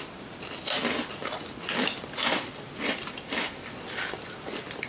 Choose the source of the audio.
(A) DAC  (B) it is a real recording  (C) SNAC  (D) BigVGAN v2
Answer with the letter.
B